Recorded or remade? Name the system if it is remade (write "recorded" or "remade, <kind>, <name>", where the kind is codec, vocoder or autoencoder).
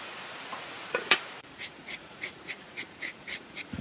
remade, vocoder, Vocos